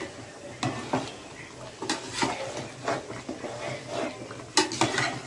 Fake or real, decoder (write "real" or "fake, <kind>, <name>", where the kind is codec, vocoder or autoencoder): real